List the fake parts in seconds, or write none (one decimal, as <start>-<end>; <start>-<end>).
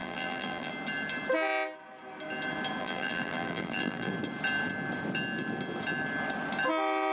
0.0-0.7; 2.8-4.1